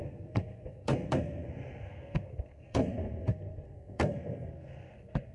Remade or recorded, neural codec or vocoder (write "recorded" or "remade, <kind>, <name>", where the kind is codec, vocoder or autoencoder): remade, codec, SNAC